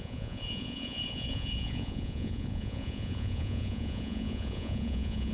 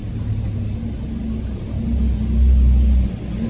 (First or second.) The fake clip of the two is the first